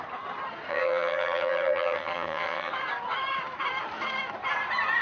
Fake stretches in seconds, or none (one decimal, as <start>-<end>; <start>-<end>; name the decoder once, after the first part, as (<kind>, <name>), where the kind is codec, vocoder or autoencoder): 0.7-2.7 (vocoder, HiFi-GAN)